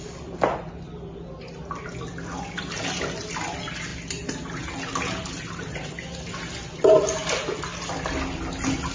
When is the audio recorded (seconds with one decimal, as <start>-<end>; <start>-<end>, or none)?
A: 0.0-8.9